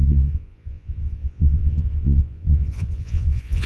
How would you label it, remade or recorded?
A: remade